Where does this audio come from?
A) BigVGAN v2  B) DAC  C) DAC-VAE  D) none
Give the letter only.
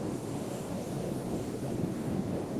B